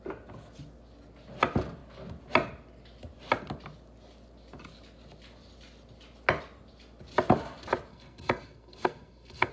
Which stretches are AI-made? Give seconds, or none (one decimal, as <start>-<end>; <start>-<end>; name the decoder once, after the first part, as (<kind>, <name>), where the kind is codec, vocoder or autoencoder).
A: 7.9-9.5 (codec, SNAC)

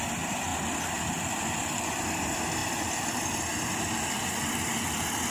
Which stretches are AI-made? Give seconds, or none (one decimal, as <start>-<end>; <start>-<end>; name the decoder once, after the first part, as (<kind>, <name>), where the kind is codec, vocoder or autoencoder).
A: 0.0-5.3 (vocoder, BigVGAN v2)